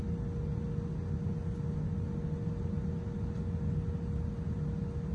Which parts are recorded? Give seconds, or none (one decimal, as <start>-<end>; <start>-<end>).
0.0-5.1